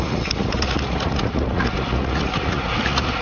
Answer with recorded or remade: remade